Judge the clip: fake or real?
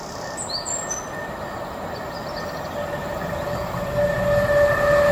real